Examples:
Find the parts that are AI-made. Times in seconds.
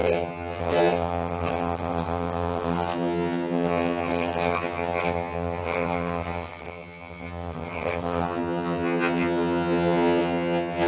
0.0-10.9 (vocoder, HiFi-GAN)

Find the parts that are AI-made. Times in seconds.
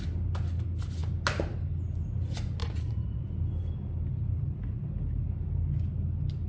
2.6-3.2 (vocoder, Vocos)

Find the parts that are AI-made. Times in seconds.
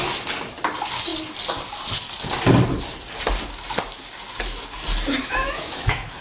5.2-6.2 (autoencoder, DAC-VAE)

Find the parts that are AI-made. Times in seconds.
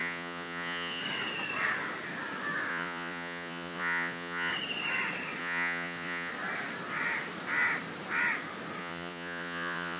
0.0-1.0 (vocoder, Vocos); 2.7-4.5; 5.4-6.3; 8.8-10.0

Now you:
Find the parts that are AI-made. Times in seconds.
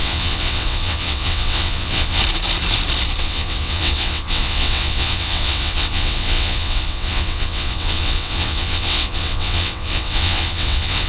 0.0-2.2 (vocoder, WaveNeXt); 3.2-11.1